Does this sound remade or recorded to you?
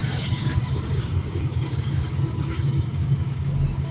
remade